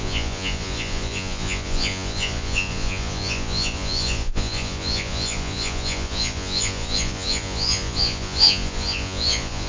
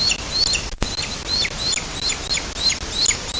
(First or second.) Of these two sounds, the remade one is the first